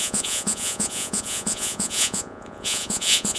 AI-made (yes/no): yes